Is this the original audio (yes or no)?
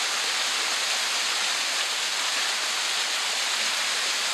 yes